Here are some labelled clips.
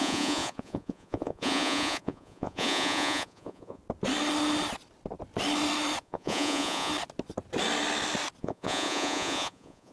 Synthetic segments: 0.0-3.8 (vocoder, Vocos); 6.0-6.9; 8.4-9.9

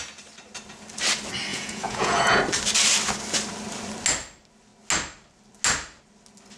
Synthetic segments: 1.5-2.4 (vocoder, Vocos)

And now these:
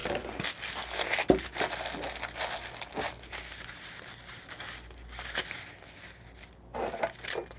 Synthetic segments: none